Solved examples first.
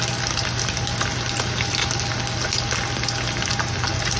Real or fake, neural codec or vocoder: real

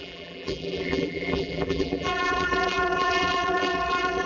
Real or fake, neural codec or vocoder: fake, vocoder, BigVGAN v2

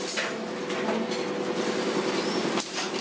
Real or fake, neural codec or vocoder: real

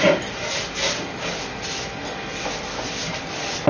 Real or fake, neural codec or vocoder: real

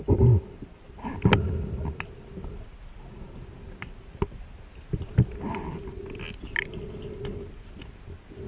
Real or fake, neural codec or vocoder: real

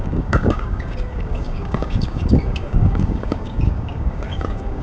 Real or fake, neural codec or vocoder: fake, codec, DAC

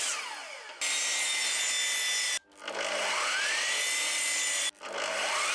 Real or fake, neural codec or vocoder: real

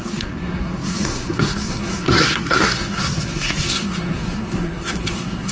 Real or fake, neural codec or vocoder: fake, codec, SNAC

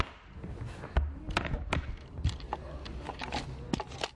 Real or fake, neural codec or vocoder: real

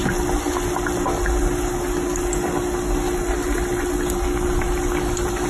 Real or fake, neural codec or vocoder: real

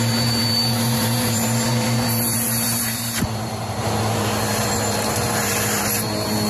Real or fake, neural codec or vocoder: fake, vocoder, BigVGAN v2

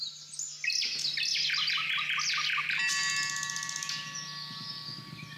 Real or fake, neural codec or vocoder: real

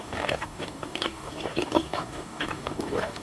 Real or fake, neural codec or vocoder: fake, codec, DAC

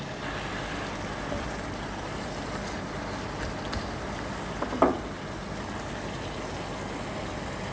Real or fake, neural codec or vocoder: real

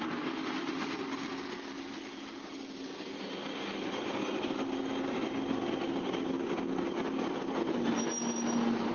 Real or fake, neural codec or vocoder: real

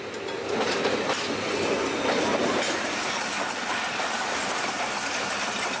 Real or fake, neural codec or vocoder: real